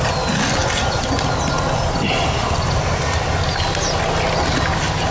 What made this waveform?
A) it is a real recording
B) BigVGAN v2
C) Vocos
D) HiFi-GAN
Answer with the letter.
A